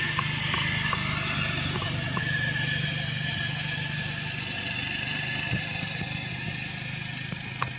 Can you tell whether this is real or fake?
real